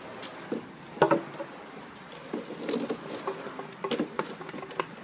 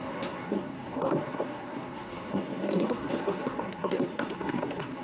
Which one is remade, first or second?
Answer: second